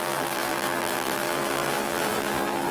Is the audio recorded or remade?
remade